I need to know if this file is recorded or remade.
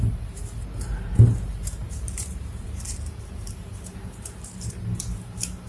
remade